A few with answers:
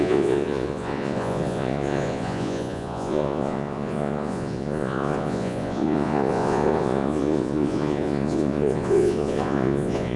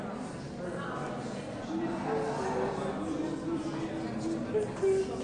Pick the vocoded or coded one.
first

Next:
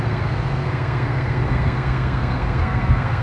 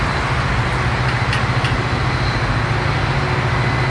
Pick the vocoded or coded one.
first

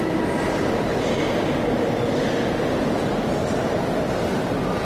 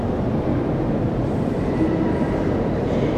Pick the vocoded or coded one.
second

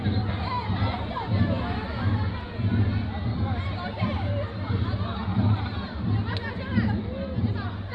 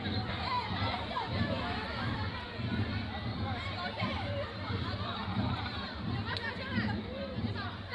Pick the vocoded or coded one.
second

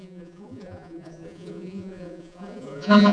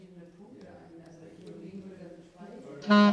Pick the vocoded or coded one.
first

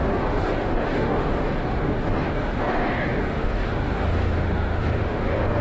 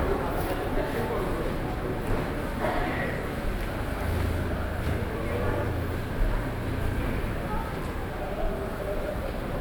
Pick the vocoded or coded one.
first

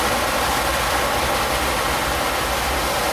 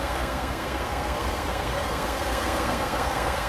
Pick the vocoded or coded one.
second